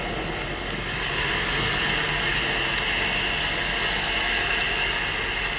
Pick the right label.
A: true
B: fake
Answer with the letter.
A